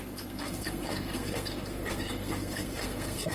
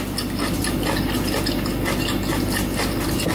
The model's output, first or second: first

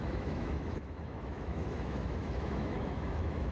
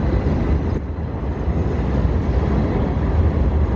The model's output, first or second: first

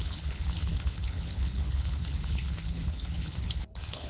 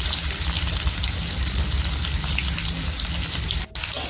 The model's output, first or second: first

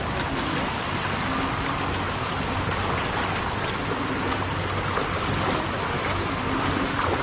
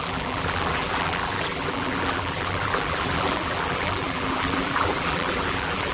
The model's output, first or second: second